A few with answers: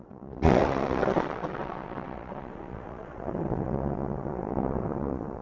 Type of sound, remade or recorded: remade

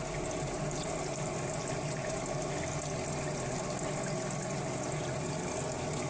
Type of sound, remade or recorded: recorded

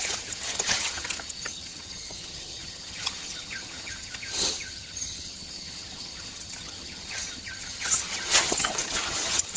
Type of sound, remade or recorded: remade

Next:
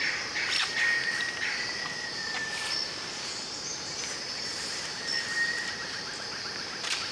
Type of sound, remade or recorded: recorded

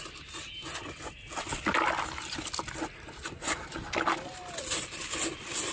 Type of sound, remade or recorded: recorded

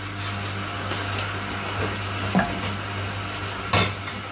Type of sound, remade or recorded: recorded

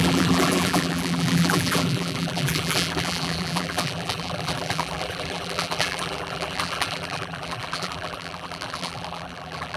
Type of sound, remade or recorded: remade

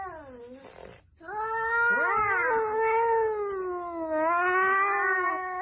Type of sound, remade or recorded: recorded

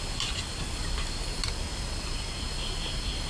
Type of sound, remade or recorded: recorded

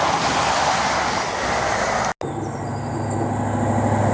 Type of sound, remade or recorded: recorded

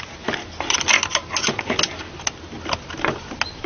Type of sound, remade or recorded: recorded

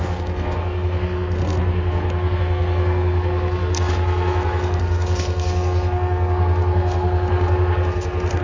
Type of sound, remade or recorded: remade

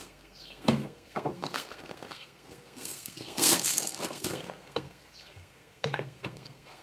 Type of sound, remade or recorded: remade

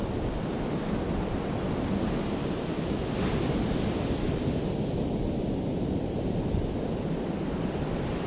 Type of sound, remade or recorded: recorded